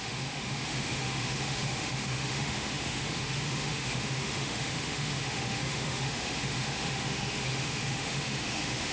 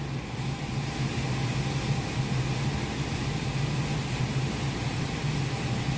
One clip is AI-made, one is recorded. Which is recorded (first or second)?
second